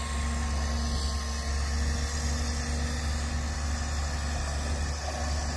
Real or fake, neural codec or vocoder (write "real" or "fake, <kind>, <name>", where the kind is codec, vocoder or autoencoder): real